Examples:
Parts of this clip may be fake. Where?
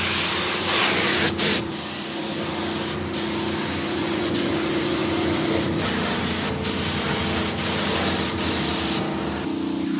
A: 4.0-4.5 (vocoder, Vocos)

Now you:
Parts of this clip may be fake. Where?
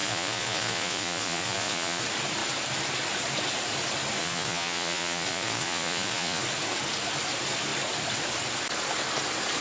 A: 0.0-2.0 (vocoder, Vocos); 4.2-6.4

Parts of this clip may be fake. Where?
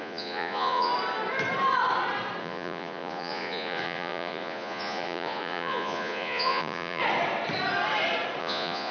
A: 0.0-0.9 (vocoder, Vocos); 2.4-7.0; 8.4-8.9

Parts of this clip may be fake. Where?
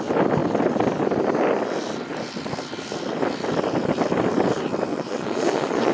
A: 4.9-5.9 (vocoder, Vocos)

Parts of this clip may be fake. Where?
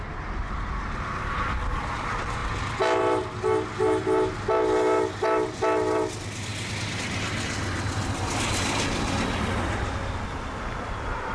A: none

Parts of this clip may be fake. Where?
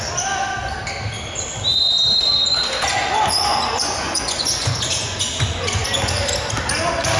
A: 2.4-6.2 (vocoder, Vocos)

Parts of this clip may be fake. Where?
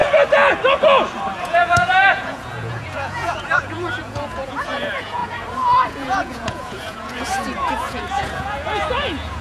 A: 1.4-5.2 (vocoder, Vocos); 5.9-9.4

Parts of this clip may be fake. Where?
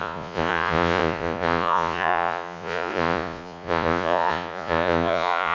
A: 0.0-5.5 (vocoder, Vocos)